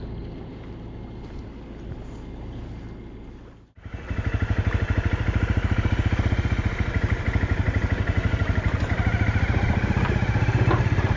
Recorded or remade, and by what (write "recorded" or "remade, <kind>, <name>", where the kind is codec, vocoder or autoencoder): recorded